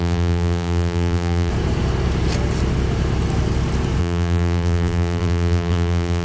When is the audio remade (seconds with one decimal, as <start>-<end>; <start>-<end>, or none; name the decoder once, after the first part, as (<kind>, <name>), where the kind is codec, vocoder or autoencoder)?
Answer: 0.0-1.5 (vocoder, BigVGAN v2); 4.0-6.2